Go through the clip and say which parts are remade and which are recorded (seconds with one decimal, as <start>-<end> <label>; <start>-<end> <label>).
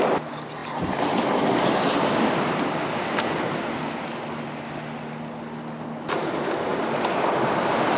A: 0.0-8.0 recorded